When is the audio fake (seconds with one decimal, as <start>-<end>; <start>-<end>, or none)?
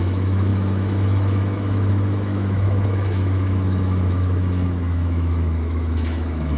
0.0-6.6